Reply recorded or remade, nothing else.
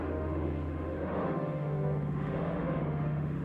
remade